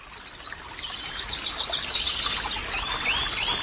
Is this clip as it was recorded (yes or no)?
yes